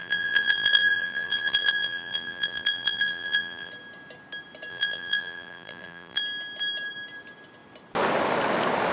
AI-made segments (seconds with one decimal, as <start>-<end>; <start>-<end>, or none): 0.0-3.7; 4.7-6.2